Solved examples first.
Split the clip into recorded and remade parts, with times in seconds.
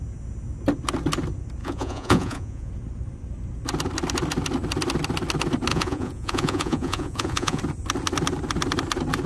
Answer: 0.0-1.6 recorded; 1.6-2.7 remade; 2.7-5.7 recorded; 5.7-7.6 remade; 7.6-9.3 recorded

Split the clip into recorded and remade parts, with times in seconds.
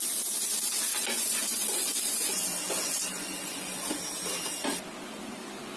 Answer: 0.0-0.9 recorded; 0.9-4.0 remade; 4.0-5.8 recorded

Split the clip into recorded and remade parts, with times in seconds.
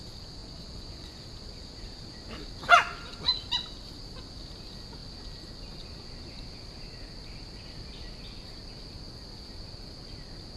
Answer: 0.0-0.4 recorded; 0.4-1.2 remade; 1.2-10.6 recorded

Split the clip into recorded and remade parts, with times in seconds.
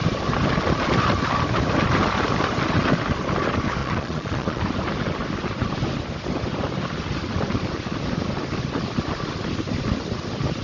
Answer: 0.0-3.8 recorded; 3.8-4.6 remade; 4.6-10.6 recorded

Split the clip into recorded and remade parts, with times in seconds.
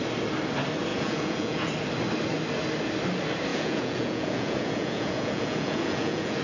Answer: 0.0-0.9 recorded; 0.9-1.7 remade; 1.7-3.5 recorded; 3.5-6.4 remade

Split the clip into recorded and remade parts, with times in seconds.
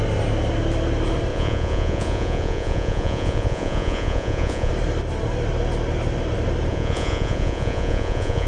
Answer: 0.0-1.3 recorded; 1.3-4.7 remade; 4.7-6.7 recorded; 6.7-8.5 remade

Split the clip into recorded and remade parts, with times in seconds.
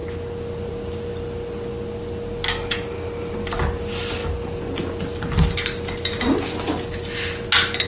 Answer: 0.0-7.9 recorded